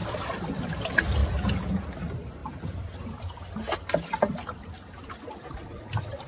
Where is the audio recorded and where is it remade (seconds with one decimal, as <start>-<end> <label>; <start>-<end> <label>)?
0.0-0.6 remade; 0.6-2.4 recorded; 2.4-3.0 remade; 3.0-4.4 recorded; 4.4-5.3 remade; 5.3-6.3 recorded